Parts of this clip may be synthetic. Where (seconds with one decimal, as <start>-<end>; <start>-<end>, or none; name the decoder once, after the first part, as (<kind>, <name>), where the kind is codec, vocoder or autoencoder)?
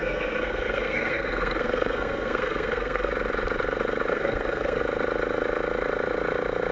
0.0-3.1 (codec, SNAC); 4.1-4.8